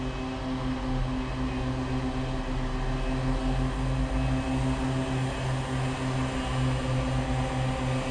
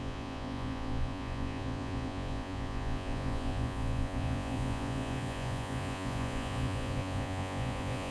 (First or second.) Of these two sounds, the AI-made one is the second